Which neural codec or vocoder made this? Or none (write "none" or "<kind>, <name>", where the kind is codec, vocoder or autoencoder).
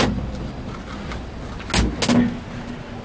none